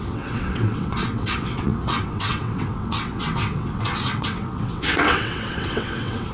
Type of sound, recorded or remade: remade